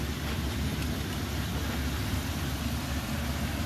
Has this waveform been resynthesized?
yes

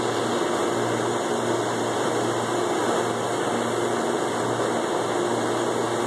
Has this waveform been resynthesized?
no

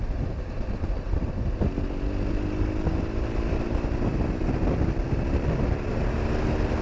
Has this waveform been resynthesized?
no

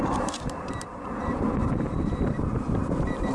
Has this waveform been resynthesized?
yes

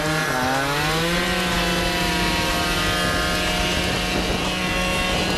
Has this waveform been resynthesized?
no